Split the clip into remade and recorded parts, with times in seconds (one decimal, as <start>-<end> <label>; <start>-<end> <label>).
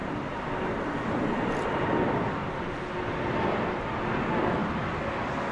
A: 0.0-5.5 recorded